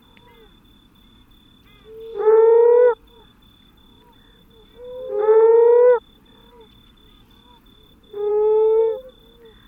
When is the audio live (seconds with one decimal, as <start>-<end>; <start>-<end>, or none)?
0.0-8.3; 8.8-9.7